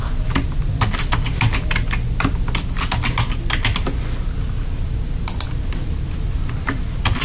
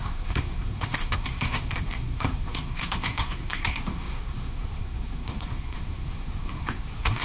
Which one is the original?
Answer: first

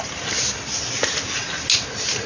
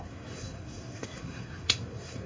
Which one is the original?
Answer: first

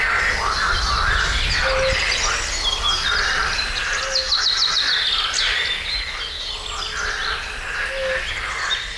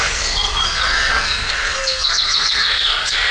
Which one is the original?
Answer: first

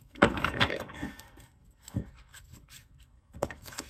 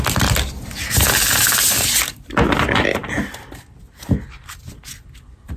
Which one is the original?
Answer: second